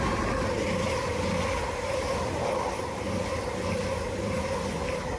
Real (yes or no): no